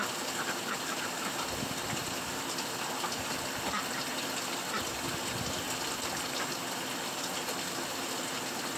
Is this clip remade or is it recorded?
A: recorded